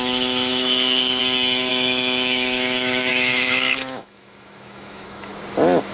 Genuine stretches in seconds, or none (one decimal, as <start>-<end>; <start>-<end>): 1.2-1.7; 5.3-5.9